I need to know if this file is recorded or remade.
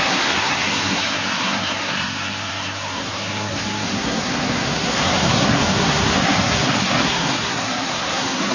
remade